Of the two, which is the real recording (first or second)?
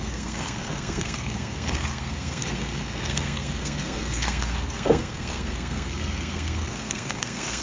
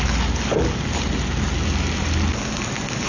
second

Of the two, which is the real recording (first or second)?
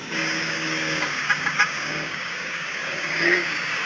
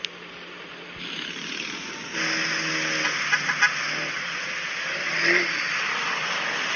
second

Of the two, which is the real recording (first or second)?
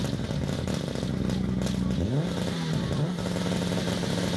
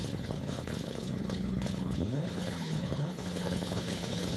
first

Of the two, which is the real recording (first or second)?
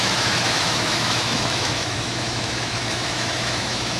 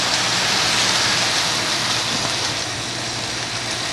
second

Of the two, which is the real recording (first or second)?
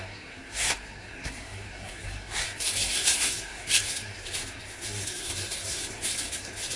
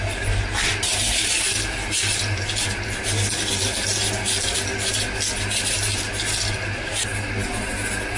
second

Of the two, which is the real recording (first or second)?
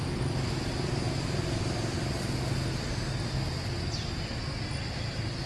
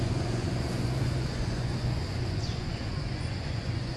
first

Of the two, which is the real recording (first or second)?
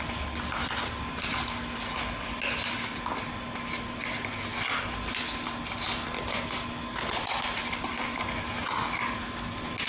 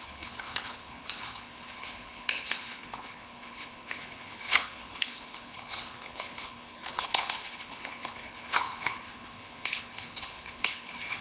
first